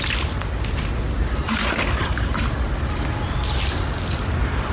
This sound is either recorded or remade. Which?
recorded